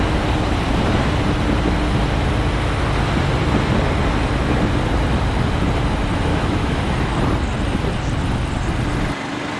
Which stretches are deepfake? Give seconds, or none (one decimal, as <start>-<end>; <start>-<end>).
6.3-6.8